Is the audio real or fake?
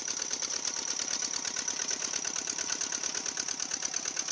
real